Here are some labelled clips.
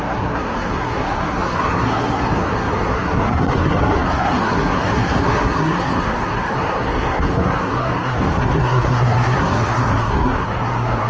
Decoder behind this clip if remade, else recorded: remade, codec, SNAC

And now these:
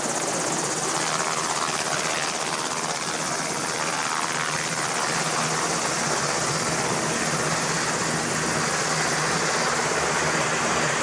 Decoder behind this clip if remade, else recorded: recorded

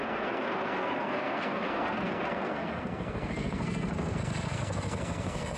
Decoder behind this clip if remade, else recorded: remade, codec, SNAC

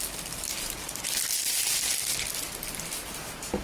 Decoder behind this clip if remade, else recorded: recorded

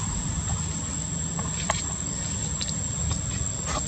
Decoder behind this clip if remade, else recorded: recorded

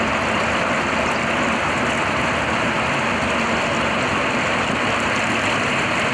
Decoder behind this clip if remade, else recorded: recorded